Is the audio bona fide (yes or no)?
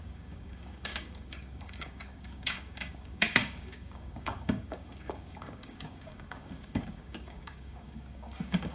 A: no